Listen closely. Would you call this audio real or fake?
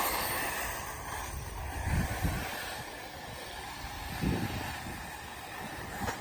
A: real